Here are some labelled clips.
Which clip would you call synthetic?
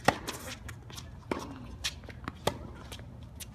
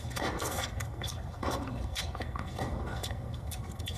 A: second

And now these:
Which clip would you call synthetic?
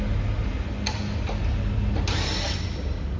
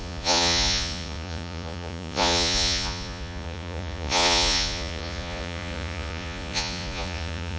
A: second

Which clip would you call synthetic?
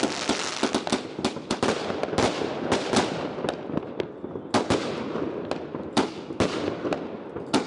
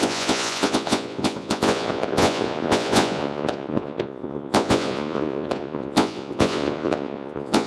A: second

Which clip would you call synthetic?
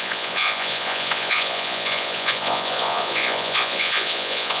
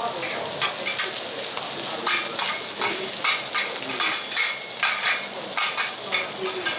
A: first